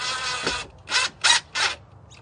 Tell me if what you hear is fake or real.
real